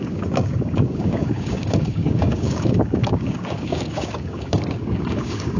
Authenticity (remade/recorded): remade